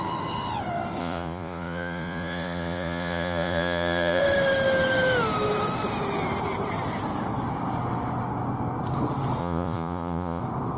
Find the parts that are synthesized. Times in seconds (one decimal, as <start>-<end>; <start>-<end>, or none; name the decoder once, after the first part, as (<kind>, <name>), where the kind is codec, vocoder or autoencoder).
1.0-4.2 (vocoder, Vocos); 9.4-10.4